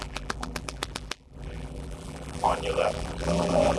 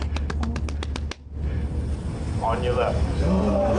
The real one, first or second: second